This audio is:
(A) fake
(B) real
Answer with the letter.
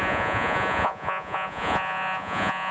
A